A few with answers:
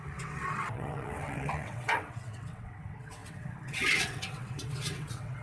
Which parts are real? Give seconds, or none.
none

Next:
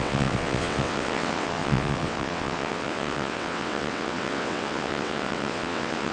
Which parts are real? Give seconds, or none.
none